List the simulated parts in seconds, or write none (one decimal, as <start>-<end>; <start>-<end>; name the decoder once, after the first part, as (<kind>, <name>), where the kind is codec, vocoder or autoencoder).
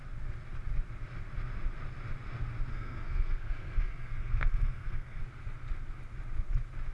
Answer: 2.7-5.2 (codec, SNAC)